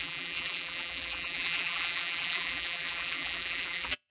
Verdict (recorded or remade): remade